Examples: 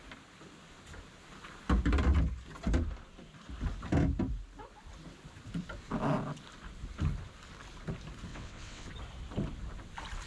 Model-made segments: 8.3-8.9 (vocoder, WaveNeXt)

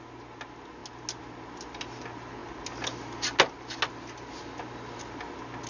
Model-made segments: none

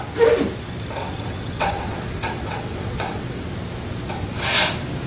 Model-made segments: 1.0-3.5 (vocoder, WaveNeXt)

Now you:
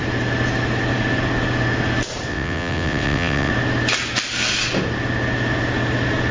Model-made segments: 2.3-3.5 (vocoder, WaveNeXt)

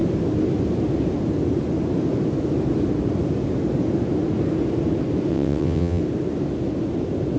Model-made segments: 5.3-6.0 (vocoder, WaveNeXt)